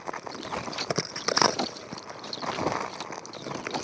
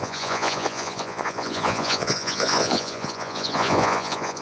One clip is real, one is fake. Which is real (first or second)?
first